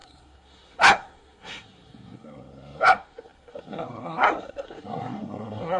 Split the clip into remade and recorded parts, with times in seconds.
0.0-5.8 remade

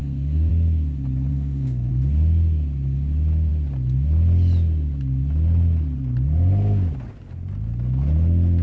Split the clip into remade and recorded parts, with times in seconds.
0.0-0.5 remade; 0.5-1.3 recorded; 1.3-1.9 remade; 1.9-8.6 recorded